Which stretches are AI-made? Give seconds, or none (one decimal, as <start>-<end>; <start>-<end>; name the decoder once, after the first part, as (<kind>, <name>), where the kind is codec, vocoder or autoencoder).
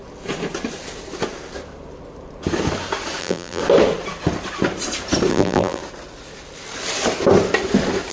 3.2-3.6 (vocoder, BigVGAN v2); 5.3-5.8